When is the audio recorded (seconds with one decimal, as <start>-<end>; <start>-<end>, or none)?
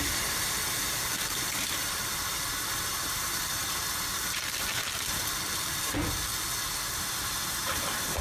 6.3-7.1